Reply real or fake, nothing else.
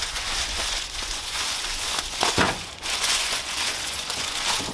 fake